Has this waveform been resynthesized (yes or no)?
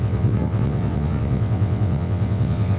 yes